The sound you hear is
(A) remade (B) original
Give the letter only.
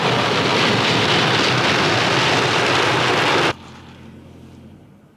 B